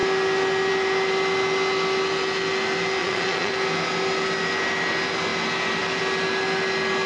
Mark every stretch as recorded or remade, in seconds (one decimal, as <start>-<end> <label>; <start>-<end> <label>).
0.0-3.0 recorded; 3.0-3.5 remade; 3.5-7.1 recorded